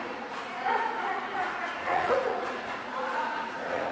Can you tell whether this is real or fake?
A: fake